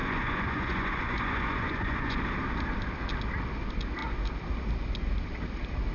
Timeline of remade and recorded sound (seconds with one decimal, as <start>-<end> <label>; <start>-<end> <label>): 0.0-2.2 remade; 2.2-5.9 recorded